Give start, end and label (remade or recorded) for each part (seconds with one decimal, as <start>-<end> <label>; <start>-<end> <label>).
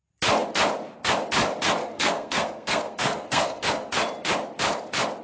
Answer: 0.0-1.8 recorded; 1.8-3.9 remade; 3.9-5.2 recorded